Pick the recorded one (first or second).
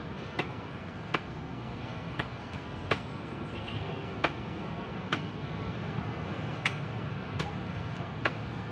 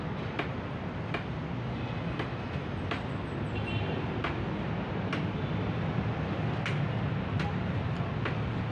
second